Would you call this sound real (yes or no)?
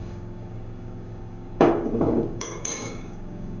no